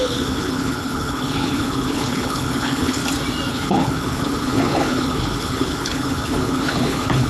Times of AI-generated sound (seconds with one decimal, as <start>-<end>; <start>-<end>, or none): 0.0-3.0; 3.5-7.3